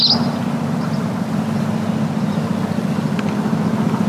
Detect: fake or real real